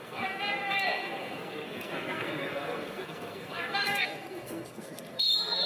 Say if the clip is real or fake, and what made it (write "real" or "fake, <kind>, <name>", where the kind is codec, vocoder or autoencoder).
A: fake, codec, SNAC